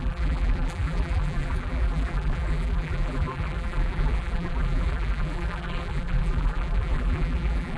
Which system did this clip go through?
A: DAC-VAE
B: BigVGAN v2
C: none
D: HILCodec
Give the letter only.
B